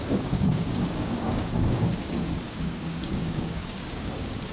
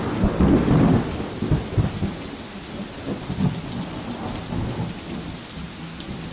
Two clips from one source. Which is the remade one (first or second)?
first